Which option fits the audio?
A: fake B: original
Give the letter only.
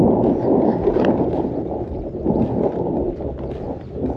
B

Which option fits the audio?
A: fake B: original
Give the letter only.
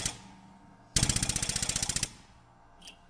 B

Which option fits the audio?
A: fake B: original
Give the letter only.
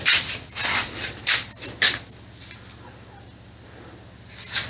B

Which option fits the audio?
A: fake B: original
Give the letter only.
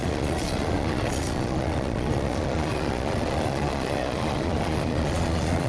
A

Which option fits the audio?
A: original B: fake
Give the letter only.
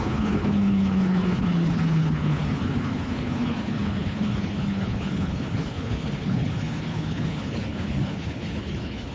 B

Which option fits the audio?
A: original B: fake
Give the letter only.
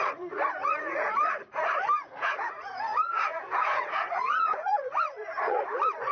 B